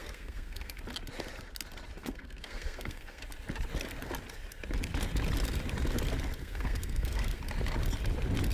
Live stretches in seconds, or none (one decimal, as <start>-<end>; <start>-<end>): 0.8-2.0; 3.2-6.4; 7.4-8.5